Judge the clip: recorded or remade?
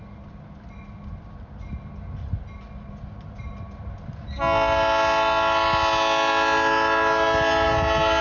recorded